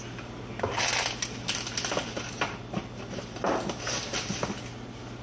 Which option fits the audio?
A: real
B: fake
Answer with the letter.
A